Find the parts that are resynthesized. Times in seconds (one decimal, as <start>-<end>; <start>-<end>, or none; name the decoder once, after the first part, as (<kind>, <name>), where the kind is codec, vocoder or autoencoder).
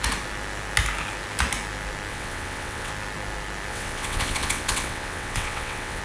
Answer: 2.1-2.9 (vocoder, WaveNeXt); 3.7-6.0